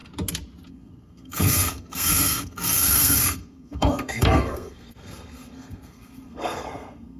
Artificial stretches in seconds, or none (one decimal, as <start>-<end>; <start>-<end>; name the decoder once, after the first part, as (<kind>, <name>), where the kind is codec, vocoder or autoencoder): 0.7-7.2 (codec, SNAC)

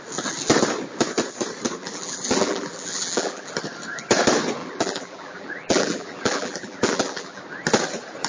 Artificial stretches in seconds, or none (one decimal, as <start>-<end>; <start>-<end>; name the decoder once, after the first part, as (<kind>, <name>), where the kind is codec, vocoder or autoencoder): 1.8-3.5 (vocoder, BigVGAN v2); 4.6-7.4

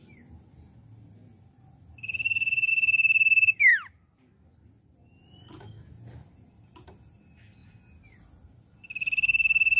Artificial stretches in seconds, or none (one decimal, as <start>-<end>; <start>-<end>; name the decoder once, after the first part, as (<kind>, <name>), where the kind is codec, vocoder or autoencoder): none